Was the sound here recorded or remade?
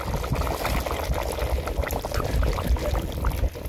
recorded